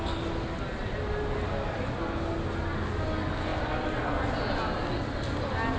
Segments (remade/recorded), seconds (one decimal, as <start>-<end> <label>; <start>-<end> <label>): 0.0-5.8 recorded